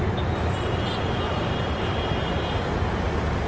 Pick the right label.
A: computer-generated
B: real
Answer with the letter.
A